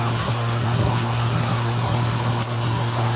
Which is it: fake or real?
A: fake